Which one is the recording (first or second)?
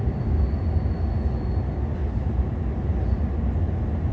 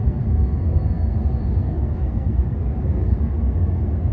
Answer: first